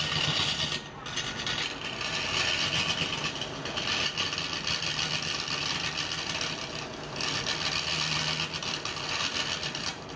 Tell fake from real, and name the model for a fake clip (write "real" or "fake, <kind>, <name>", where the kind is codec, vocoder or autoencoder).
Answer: real